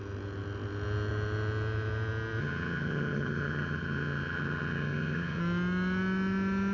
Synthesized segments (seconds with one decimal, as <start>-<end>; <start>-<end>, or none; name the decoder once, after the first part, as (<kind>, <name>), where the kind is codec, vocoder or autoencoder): 2.4-5.4 (vocoder, HiFi-GAN)